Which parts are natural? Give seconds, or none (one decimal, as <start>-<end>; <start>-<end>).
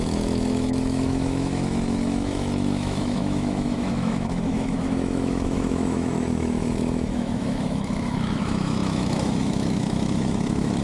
none